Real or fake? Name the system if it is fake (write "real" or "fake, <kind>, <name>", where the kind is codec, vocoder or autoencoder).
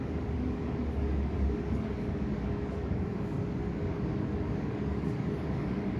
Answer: fake, codec, DAC